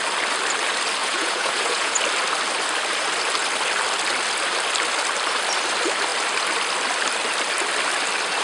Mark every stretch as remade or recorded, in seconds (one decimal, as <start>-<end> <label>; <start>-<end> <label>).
0.0-1.0 recorded; 1.0-2.0 remade; 2.0-8.4 recorded